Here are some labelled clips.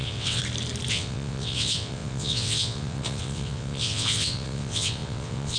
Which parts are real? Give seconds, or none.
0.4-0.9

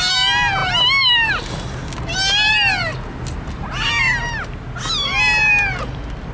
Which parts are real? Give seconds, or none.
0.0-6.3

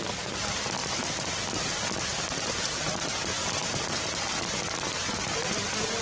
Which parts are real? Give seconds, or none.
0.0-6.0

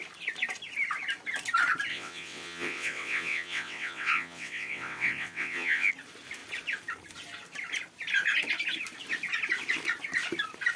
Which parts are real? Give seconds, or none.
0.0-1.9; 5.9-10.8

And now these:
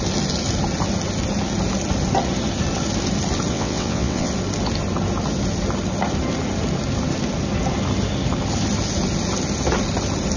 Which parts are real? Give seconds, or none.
0.0-3.5; 4.3-10.4